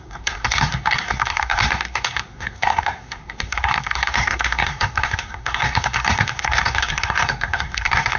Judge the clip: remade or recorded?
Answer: remade